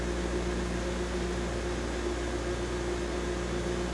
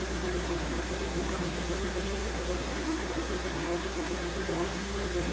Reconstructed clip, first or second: second